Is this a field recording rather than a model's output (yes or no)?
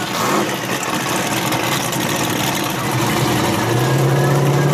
yes